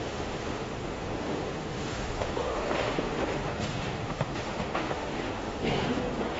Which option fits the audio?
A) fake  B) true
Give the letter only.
A